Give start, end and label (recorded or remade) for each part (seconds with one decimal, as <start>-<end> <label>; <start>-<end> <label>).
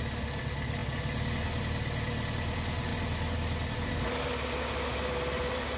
0.0-5.8 recorded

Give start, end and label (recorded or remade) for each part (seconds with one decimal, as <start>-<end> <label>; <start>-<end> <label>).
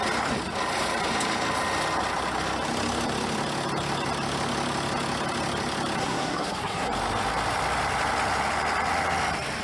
0.0-6.0 recorded; 6.0-6.9 remade; 6.9-9.6 recorded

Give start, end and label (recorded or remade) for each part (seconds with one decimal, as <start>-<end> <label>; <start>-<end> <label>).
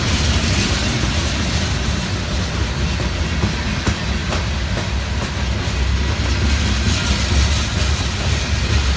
0.0-9.0 recorded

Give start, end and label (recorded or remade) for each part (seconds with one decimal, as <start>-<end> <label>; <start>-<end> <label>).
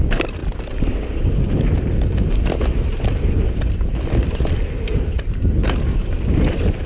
0.0-6.9 recorded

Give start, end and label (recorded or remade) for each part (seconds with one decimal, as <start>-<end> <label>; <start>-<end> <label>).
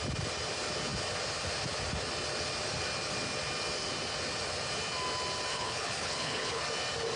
0.0-5.5 recorded; 5.5-6.6 remade; 6.6-7.2 recorded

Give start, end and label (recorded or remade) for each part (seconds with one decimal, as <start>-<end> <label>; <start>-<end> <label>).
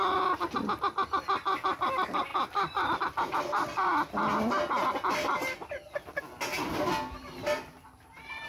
0.0-4.3 remade; 4.3-7.2 recorded; 7.2-8.5 remade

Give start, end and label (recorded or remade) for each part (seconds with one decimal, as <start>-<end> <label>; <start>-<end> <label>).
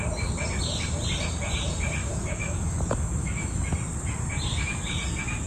0.0-2.0 recorded; 2.0-3.6 remade; 3.6-5.5 recorded